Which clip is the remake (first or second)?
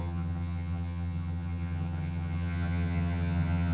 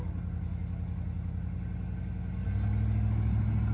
first